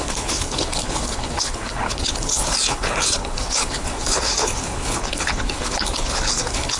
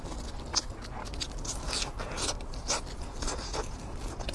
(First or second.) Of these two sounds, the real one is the second